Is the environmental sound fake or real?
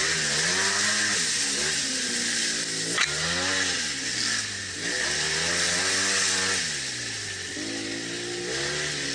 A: real